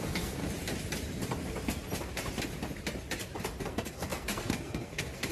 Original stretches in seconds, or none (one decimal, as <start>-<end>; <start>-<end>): 0.4-3.6